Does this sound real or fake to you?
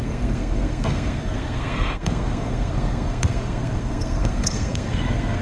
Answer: fake